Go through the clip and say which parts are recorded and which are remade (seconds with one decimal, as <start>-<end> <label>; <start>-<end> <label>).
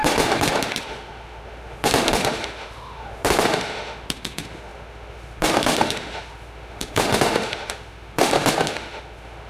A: 0.0-9.5 remade